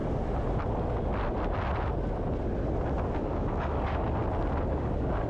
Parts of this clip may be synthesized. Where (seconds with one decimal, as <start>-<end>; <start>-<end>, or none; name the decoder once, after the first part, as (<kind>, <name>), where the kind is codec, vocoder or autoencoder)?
3.2-4.2 (codec, DAC); 4.7-5.3